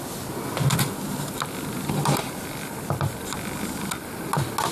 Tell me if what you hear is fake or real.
real